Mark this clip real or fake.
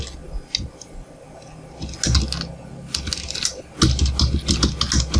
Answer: real